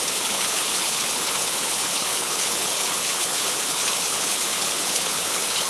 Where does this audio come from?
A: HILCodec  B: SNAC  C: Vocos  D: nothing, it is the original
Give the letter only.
A